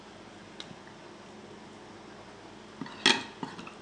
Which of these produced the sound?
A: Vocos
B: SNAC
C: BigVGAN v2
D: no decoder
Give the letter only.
D